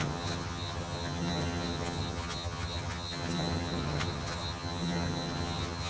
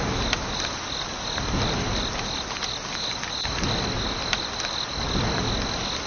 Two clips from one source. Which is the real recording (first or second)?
second